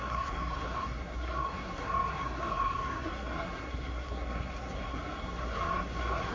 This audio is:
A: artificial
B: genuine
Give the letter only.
A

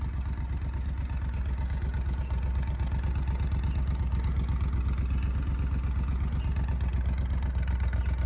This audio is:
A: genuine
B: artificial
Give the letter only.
A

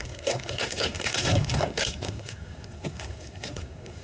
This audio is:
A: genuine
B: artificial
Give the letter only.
B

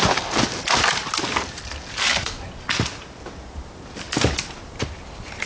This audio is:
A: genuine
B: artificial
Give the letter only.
A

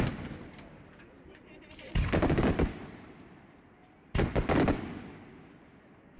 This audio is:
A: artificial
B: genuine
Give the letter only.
B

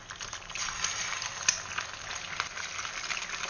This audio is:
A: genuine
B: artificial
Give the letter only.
A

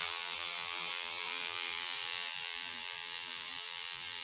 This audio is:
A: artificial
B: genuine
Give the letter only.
A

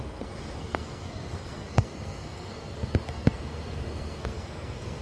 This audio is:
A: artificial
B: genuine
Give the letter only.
A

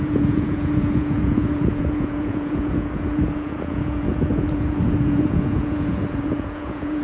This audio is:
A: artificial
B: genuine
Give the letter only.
A